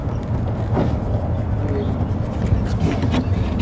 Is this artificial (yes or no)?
no